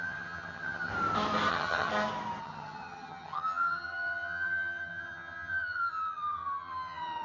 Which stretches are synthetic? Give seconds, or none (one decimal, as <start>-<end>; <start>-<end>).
0.0-0.9; 1.5-1.9; 2.4-7.2